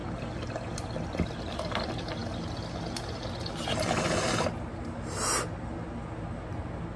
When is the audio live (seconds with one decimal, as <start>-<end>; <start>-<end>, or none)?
0.0-7.0